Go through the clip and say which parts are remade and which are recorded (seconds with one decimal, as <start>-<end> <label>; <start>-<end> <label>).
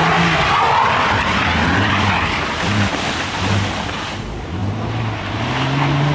0.0-3.7 remade; 3.7-4.6 recorded; 4.6-5.3 remade; 5.3-6.1 recorded